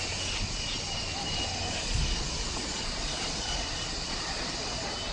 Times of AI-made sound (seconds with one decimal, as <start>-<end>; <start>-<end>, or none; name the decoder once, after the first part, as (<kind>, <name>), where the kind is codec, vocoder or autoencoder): 1.8-4.5 (vocoder, Vocos)